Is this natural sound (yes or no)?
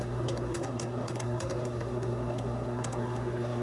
no